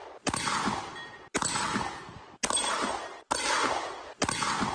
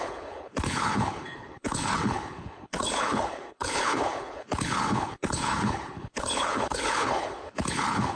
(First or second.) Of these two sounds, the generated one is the second